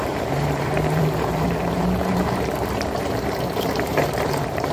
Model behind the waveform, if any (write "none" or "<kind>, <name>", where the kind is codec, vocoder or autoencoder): vocoder, BigVGAN v2